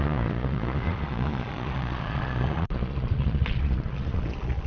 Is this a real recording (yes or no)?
no